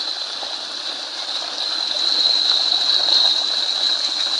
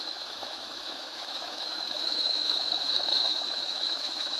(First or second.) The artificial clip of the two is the second